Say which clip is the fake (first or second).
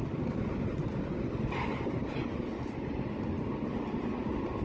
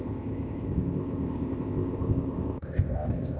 second